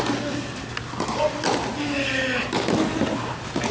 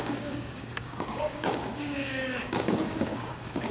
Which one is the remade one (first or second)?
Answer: second